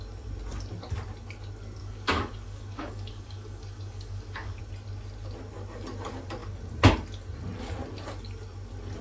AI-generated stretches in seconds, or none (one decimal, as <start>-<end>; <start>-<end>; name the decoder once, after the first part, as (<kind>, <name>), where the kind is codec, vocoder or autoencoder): 1.8-4.6 (codec, DAC)